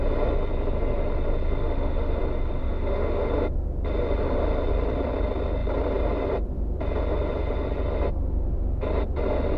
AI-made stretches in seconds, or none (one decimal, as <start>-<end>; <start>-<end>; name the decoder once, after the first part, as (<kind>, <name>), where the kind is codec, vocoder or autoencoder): 1.6-2.2 (autoencoder, DAC-VAE); 2.6-3.2